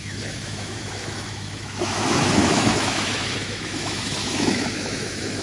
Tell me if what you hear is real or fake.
fake